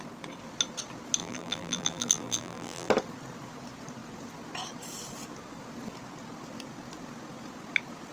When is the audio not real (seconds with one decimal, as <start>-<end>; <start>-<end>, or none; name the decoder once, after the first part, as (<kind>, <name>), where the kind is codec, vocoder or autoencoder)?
1.2-2.9 (vocoder, BigVGAN v2)